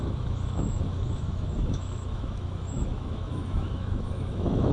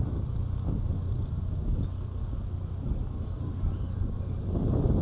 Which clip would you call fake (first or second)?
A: first